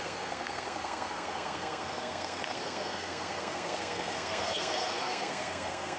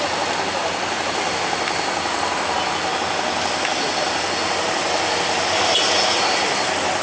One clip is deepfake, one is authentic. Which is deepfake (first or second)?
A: first